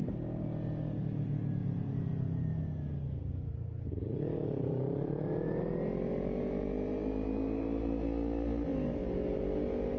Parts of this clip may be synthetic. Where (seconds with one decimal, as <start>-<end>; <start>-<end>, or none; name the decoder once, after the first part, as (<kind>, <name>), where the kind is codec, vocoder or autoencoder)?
none